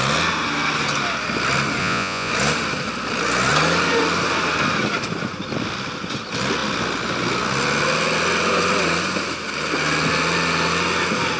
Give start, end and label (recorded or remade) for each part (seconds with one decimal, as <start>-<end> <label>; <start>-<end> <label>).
0.0-1.8 recorded; 1.8-2.3 remade; 2.3-11.4 recorded